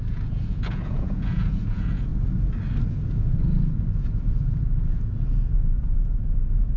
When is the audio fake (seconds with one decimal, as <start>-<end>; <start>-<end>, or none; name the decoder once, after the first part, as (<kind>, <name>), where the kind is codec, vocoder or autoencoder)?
0.0-2.1 (vocoder, Vocos); 2.9-6.8